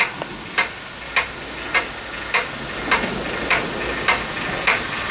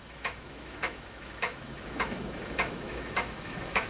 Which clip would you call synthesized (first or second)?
second